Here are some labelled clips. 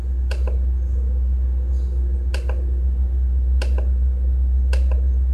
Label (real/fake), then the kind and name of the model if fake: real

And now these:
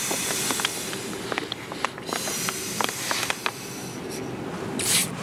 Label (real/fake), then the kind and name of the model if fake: real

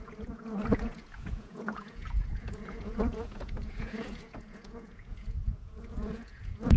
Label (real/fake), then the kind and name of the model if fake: fake, vocoder, Vocos